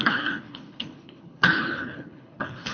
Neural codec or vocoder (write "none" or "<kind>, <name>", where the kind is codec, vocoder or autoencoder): codec, HILCodec